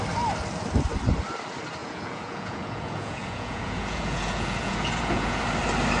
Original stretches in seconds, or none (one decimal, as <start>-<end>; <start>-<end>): 0.0-1.8; 5.4-6.0